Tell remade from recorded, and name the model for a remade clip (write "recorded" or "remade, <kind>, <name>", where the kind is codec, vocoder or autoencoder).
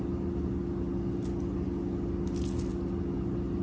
recorded